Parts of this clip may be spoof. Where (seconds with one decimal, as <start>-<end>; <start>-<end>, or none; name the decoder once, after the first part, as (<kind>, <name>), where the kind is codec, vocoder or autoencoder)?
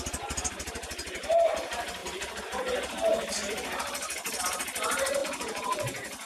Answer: 5.2-6.3 (vocoder, Vocos)